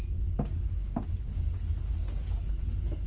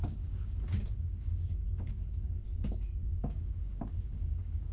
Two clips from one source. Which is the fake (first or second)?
second